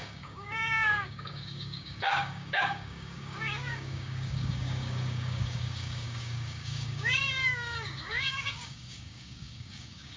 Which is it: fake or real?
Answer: fake